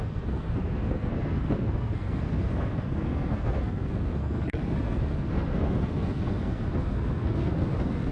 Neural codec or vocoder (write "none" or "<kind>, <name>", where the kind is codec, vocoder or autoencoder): codec, SNAC